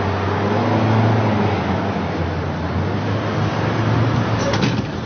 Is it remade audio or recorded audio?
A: recorded